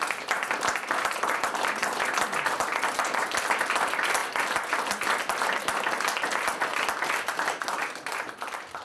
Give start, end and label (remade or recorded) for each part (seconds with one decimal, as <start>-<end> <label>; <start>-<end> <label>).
0.0-8.8 recorded